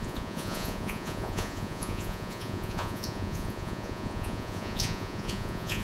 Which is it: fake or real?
fake